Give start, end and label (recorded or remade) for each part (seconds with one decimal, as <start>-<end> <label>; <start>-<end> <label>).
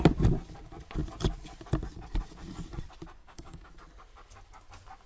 0.0-3.2 recorded; 3.2-3.7 remade; 3.7-5.1 recorded